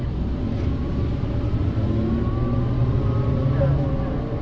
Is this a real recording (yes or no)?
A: yes